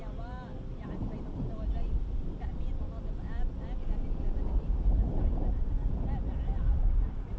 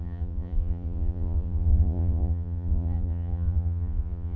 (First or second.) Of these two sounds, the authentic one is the first